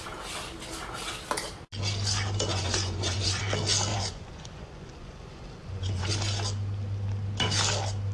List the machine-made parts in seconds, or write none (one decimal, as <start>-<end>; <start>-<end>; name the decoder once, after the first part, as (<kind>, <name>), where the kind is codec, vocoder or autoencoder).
2.5-3.4 (vocoder, Vocos); 3.9-6.1